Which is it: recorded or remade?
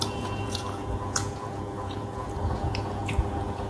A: remade